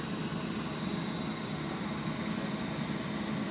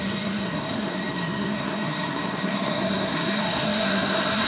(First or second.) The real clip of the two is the first